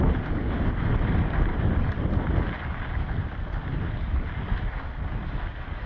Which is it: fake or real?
real